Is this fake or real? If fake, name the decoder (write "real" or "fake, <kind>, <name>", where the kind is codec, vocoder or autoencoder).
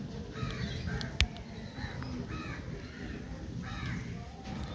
real